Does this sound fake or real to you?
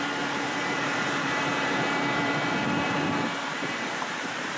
fake